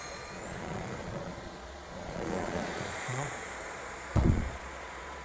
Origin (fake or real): fake